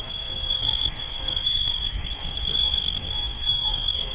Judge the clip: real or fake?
fake